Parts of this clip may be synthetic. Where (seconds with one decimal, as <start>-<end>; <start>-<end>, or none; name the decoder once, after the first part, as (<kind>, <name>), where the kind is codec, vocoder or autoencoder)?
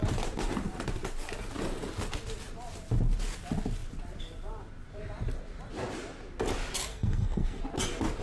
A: 6.9-7.6 (codec, SNAC)